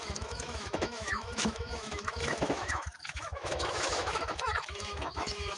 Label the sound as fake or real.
fake